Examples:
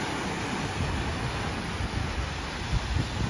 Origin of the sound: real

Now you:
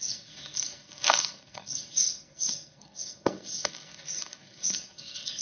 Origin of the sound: fake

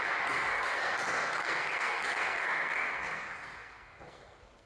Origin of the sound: fake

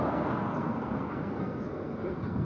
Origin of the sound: fake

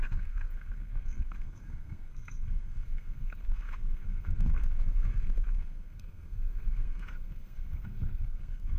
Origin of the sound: fake